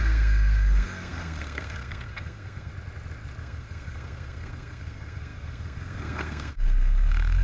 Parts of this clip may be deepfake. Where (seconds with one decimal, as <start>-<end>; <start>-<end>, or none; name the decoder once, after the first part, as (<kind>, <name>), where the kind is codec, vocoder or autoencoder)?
0.0-2.7 (codec, SNAC); 3.4-7.4